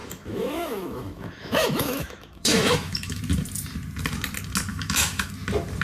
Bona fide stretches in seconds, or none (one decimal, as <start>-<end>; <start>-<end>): 3.2-4.7; 5.3-5.8